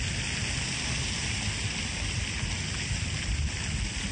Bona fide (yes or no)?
yes